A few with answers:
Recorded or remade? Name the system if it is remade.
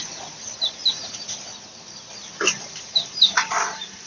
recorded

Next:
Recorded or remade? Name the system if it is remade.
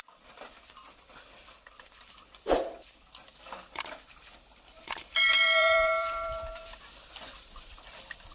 remade, vocoder, BigVGAN v2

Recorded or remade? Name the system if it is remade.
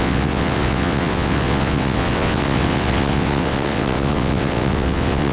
remade, vocoder, WaveNeXt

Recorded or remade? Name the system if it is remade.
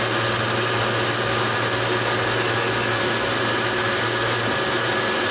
recorded